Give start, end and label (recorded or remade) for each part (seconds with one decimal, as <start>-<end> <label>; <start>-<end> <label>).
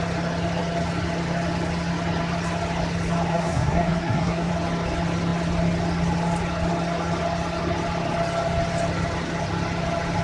0.0-3.3 recorded; 3.3-4.5 remade; 4.5-10.2 recorded